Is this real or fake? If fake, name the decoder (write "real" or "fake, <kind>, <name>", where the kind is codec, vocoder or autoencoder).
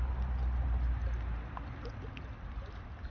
real